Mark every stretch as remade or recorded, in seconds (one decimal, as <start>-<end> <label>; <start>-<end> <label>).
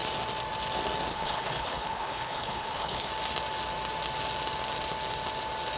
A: 0.0-1.1 recorded; 1.1-3.1 remade; 3.1-5.8 recorded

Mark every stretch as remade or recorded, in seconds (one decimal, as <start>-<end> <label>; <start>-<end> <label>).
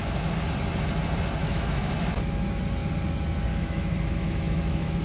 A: 0.0-1.4 recorded; 1.4-1.9 remade; 1.9-3.5 recorded; 3.5-5.0 remade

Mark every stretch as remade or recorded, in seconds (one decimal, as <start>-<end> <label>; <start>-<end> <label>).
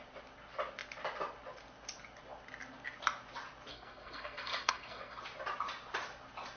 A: 0.0-3.7 recorded; 3.7-5.2 remade; 5.2-6.6 recorded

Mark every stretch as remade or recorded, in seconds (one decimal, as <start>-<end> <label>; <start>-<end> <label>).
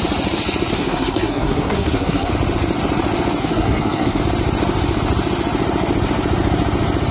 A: 0.0-0.7 recorded; 0.7-2.3 remade; 2.3-3.4 recorded; 3.4-4.2 remade; 4.2-7.1 recorded